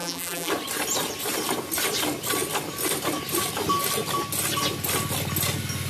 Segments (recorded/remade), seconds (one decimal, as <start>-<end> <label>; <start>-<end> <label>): 0.0-0.5 remade; 0.5-5.9 recorded